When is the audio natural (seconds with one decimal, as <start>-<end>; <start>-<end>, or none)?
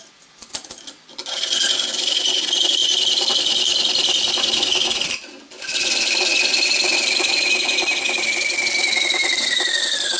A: 0.0-10.2